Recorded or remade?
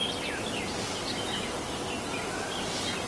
recorded